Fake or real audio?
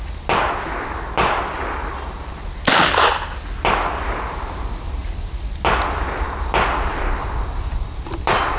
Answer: real